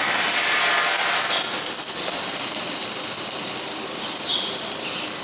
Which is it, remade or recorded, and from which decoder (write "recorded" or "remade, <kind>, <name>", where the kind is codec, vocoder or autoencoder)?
recorded